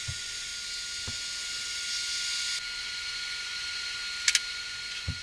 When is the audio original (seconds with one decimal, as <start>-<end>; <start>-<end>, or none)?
0.5-2.8; 4.0-4.5